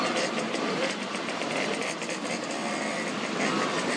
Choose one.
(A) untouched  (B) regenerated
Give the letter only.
A